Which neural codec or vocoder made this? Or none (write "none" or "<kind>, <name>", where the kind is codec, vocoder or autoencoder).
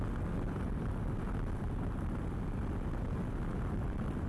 none